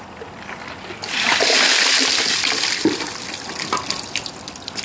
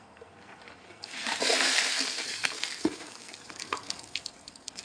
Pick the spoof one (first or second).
second